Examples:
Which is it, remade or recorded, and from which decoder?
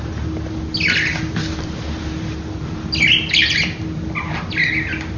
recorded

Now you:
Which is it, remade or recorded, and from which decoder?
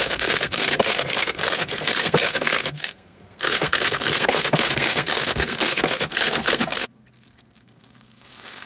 remade, codec, SNAC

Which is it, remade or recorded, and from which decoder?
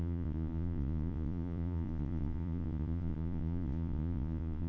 remade, vocoder, Vocos